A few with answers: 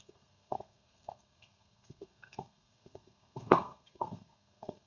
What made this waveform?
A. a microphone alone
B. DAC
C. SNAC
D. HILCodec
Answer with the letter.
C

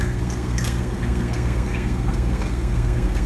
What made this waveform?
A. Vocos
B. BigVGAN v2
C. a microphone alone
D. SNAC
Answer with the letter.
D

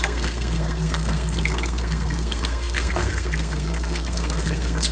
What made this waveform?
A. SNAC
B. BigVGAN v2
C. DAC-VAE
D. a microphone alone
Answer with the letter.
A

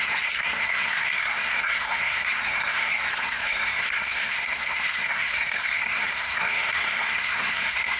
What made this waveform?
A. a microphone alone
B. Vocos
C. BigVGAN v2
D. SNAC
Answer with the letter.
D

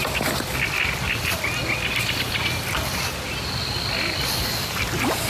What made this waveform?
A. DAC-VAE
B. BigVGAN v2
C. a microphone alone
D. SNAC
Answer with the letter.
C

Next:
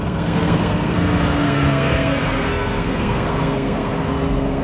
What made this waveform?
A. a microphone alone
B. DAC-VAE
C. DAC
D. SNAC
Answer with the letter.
D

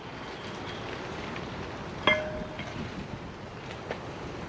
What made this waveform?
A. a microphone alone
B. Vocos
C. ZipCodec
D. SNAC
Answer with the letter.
A